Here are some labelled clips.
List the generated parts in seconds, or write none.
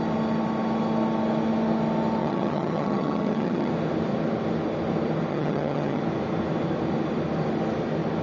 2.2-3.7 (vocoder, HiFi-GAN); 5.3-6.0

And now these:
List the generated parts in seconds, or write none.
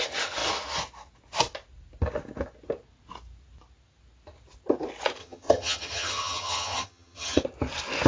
5.2-7.4 (vocoder, HiFi-GAN)